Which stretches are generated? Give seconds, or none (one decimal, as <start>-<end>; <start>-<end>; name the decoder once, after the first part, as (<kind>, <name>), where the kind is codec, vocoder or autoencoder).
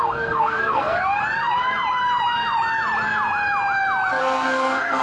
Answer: 0.0-1.2 (codec, SNAC); 4.2-5.0